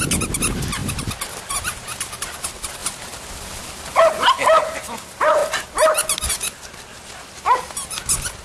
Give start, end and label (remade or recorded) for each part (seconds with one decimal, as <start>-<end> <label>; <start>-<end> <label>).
0.0-8.4 recorded